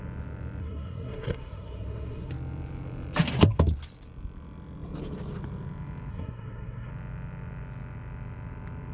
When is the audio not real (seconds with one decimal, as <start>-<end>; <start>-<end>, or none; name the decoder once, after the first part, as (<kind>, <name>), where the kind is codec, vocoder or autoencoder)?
0.6-2.3 (codec, SNAC); 6.1-6.9